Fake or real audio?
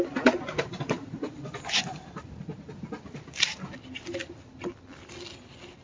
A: real